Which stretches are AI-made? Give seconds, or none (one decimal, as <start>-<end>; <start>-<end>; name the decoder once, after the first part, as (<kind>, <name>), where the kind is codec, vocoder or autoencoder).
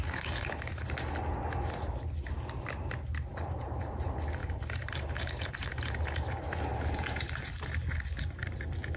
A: 3.3-3.9 (vocoder, BigVGAN v2); 4.4-5.5; 6.7-7.5